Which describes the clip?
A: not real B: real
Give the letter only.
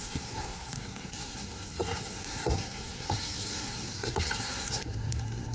A